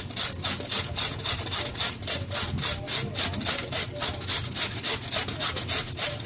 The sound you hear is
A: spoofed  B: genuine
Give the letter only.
B